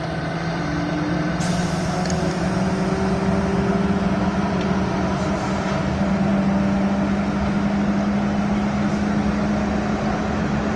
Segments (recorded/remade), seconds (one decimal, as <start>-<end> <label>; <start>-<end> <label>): 0.0-10.8 recorded